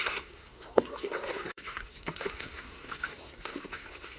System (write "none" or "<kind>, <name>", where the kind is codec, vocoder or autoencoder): codec, SNAC